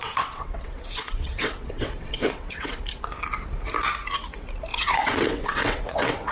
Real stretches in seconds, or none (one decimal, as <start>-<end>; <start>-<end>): 2.8-4.7